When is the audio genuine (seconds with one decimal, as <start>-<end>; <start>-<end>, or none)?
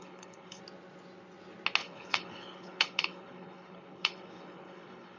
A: 0.6-1.8